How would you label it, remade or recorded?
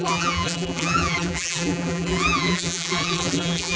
remade